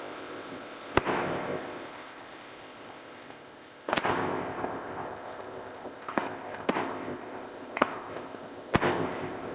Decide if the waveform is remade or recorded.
remade